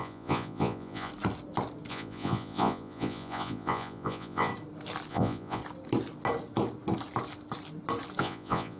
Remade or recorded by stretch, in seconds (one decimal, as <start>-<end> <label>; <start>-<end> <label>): 0.0-1.1 remade; 1.1-1.9 recorded; 1.9-4.5 remade; 4.5-5.1 recorded; 5.1-5.6 remade; 5.6-8.2 recorded; 8.2-8.8 remade